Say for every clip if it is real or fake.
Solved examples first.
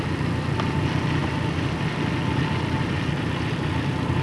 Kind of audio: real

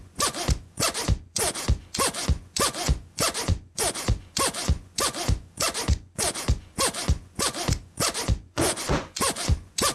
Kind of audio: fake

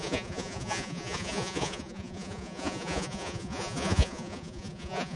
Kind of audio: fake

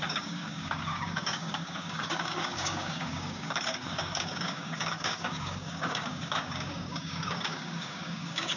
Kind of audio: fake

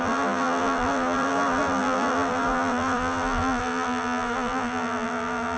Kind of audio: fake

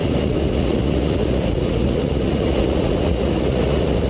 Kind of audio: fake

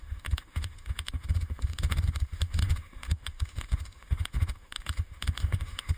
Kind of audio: fake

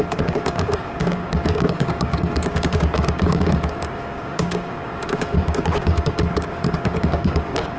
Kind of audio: fake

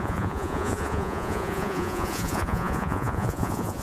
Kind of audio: fake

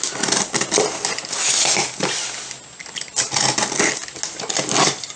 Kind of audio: real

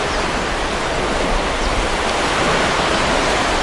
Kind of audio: fake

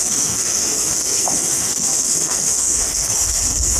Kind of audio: fake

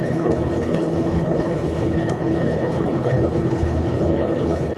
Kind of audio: fake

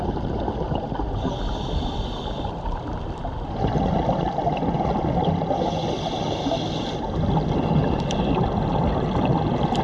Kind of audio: real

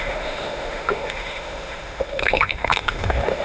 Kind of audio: fake